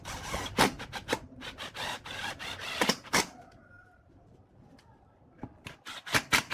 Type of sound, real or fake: real